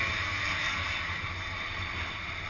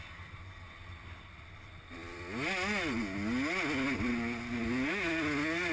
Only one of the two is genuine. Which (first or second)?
second